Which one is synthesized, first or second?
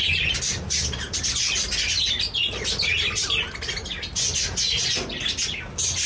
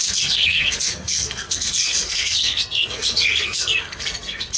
second